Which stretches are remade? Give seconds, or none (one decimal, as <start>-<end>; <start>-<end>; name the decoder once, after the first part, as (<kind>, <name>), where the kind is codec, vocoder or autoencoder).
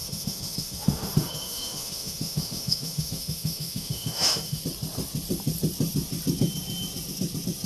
0.0-4.6 (autoencoder, DAC-VAE)